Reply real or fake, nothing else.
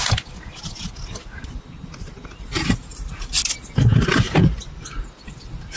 real